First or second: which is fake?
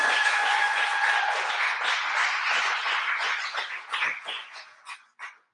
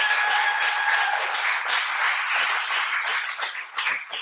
first